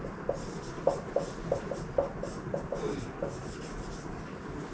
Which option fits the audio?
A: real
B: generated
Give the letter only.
A